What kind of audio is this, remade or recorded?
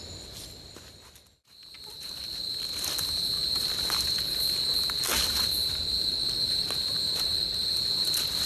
recorded